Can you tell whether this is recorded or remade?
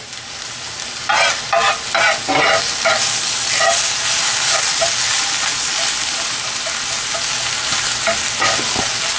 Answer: recorded